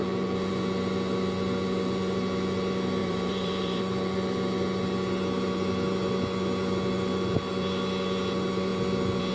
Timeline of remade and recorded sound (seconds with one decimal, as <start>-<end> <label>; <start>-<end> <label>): 0.0-3.0 recorded; 3.0-3.8 remade; 3.8-9.3 recorded